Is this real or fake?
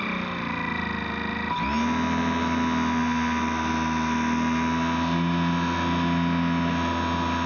real